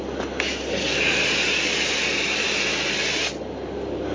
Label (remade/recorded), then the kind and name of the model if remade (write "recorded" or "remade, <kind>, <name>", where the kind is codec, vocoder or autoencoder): recorded